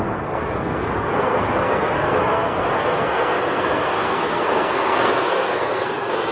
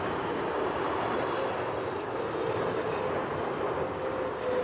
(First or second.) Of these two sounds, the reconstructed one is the first